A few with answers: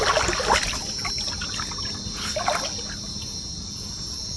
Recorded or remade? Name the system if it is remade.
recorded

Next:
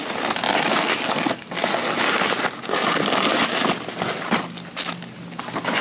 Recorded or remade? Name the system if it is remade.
recorded